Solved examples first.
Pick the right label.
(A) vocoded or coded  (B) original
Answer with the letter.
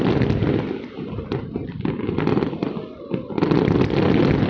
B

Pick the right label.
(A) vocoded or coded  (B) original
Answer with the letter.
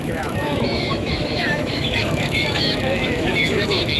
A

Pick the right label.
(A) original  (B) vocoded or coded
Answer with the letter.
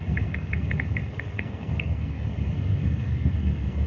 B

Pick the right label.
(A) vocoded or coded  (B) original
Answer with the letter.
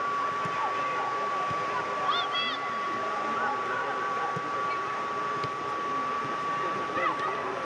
A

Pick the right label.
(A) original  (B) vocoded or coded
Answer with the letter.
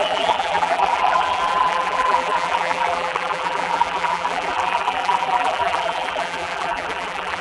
B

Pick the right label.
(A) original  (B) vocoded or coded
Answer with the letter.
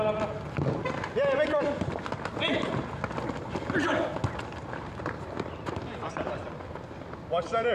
A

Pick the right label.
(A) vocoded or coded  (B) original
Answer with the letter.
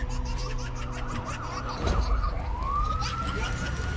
B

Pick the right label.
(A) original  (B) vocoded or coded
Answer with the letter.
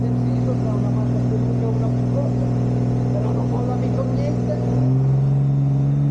A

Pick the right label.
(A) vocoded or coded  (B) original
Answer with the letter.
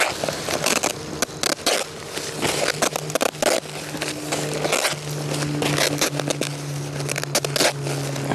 B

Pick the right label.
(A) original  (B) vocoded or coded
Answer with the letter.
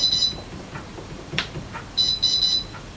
B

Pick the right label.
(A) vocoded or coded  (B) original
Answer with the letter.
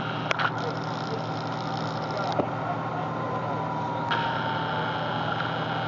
B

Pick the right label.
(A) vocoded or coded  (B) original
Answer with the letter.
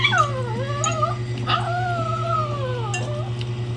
B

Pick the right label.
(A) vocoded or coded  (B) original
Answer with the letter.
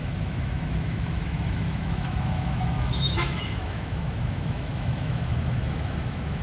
A